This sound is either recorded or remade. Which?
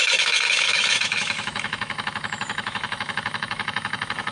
remade